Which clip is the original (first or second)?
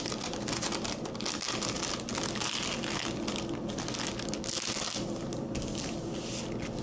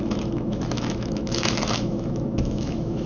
first